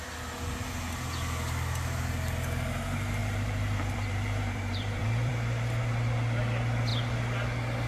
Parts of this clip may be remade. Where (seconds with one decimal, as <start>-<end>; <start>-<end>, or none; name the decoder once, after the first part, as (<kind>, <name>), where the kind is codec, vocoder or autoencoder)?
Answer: 3.2-5.3 (vocoder, BigVGAN v2)